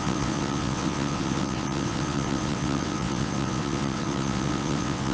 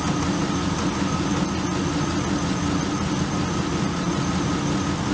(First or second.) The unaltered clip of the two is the second